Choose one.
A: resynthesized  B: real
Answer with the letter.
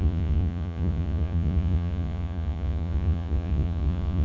A